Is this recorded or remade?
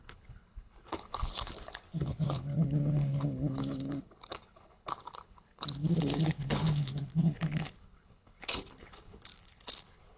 remade